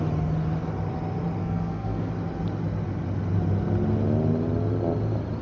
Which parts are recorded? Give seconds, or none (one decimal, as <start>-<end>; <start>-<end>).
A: 0.0-1.4; 2.1-5.4

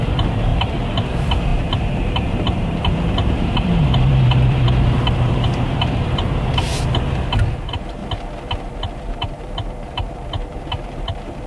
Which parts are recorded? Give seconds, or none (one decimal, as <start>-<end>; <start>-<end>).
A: 0.5-1.0; 8.0-8.7

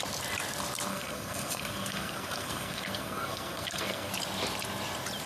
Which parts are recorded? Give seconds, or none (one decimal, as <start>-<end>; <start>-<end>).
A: 0.0-0.9; 4.1-5.3